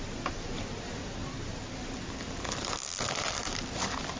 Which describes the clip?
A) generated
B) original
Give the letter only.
B